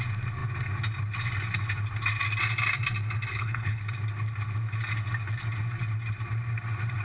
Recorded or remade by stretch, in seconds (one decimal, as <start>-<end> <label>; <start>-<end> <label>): 0.0-3.3 recorded; 3.3-3.8 remade; 3.8-7.0 recorded